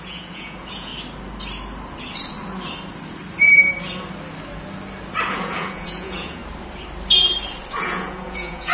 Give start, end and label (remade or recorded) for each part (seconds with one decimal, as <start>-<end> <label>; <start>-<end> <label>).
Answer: 0.0-0.9 remade; 0.9-5.3 recorded; 5.3-6.4 remade; 6.4-7.8 recorded; 7.8-8.7 remade